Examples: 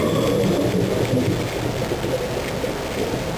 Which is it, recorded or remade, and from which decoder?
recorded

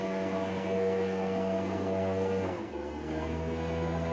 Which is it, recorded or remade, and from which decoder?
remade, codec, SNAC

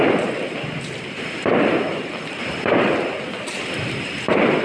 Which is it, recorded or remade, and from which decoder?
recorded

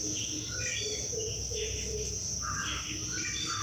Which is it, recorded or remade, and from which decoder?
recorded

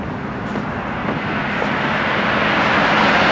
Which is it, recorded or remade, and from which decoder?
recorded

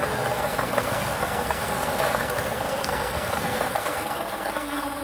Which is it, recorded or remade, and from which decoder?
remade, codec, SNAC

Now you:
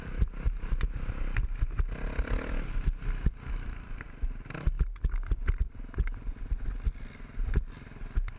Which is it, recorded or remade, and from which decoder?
recorded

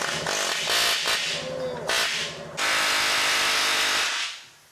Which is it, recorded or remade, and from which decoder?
recorded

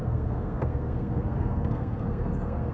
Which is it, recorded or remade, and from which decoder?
remade, codec, SNAC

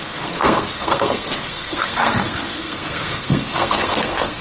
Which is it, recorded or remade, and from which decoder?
remade, codec, SNAC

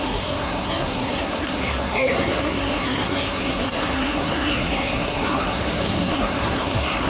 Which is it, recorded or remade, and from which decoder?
remade, codec, SNAC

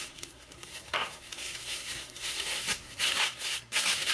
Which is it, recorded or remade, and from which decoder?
remade, codec, SNAC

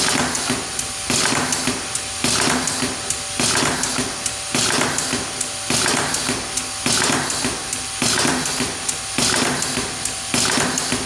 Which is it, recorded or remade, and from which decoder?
recorded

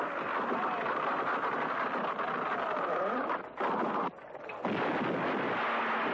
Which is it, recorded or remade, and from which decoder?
recorded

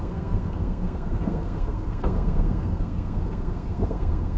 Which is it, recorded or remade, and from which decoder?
remade, codec, SNAC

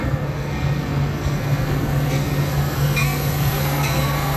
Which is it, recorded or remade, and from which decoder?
remade, codec, SNAC